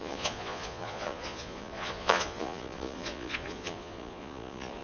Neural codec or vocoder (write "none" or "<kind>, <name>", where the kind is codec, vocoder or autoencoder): vocoder, Vocos